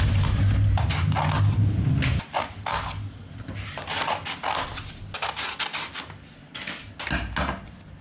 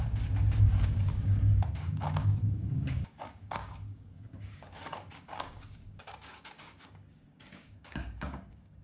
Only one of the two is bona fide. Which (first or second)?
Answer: first